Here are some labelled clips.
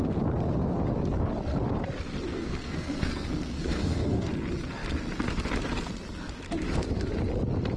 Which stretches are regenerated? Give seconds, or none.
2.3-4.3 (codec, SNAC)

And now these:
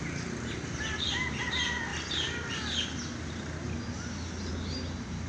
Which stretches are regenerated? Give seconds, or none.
none

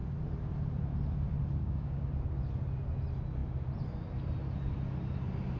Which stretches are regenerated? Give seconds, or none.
1.6-2.1 (codec, DAC)

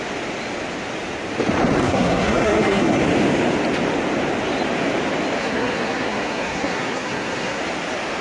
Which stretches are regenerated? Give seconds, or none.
1.8-3.0 (codec, SNAC); 5.4-7.6